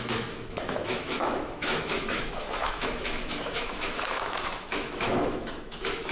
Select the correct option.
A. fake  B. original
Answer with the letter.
A